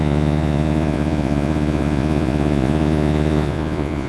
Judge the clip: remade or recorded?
remade